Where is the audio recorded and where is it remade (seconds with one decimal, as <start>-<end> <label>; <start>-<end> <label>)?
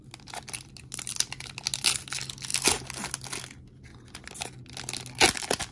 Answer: 0.0-5.7 recorded